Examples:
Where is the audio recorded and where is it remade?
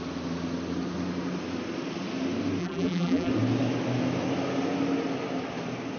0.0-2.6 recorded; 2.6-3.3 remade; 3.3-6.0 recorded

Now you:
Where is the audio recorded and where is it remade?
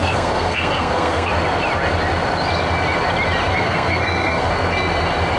0.0-1.3 remade; 1.3-3.5 recorded; 3.5-4.5 remade; 4.5-5.4 recorded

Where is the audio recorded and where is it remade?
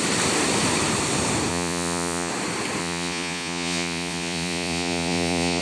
0.0-1.5 recorded; 1.5-2.3 remade; 2.3-2.8 recorded; 2.8-5.6 remade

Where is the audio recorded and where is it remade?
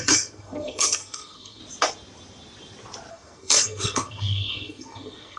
0.0-1.6 remade; 1.6-3.1 recorded; 3.1-5.4 remade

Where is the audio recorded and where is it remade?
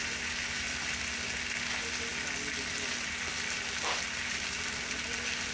0.0-5.5 recorded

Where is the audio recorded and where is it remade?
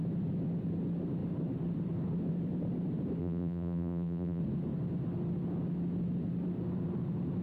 0.0-3.2 recorded; 3.2-4.4 remade; 4.4-7.4 recorded